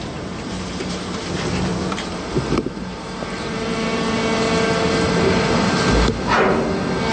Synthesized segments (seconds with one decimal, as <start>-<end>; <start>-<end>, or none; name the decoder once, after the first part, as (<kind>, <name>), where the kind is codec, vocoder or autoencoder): 1.7-4.2 (vocoder, BigVGAN v2)